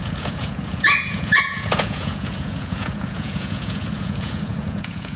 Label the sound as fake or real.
fake